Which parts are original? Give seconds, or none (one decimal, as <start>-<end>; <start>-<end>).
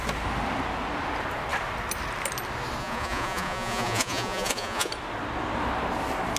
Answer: 0.0-2.8; 4.9-6.4